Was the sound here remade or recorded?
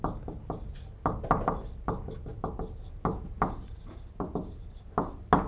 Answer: recorded